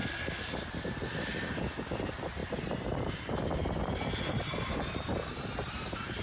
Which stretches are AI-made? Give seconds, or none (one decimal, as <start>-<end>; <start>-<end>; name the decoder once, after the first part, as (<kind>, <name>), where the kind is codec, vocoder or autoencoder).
2.4-6.2 (vocoder, BigVGAN v2)